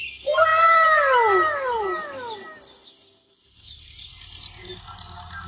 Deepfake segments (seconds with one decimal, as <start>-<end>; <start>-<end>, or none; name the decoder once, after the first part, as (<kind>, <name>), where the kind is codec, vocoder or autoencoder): none